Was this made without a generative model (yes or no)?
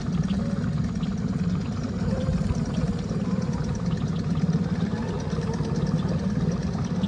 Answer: yes